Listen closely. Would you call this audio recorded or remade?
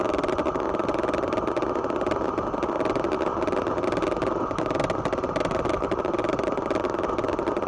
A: recorded